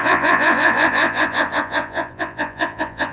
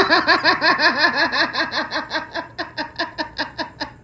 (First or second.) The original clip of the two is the second